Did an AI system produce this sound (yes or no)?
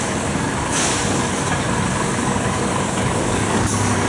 yes